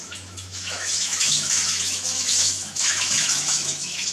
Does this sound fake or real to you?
fake